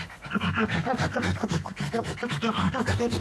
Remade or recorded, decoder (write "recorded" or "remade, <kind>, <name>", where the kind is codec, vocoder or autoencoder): remade, codec, SNAC